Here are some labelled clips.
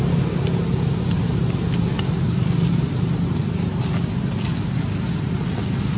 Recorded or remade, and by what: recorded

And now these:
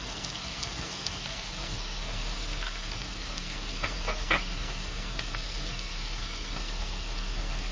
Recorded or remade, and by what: remade, codec, SNAC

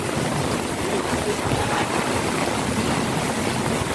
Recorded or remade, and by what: recorded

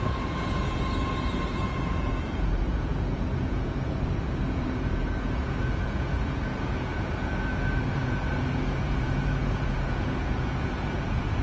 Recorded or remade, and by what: remade, vocoder, Vocos